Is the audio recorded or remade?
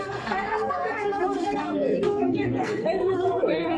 remade